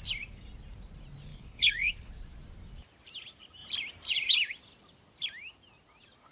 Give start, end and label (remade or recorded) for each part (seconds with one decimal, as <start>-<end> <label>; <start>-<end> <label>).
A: 0.0-1.3 recorded; 1.3-2.1 remade; 2.1-6.3 recorded